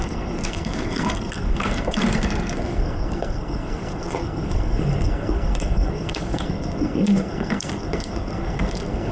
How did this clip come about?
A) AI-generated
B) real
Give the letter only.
A